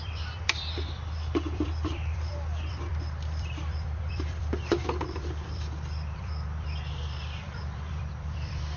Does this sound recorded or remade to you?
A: remade